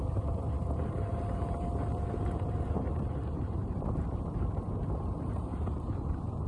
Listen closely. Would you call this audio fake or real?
fake